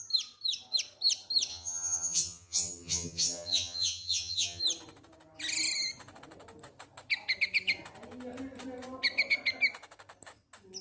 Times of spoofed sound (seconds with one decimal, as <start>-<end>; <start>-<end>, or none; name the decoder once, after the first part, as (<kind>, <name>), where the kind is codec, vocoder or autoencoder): 1.5-4.6 (vocoder, HiFi-GAN)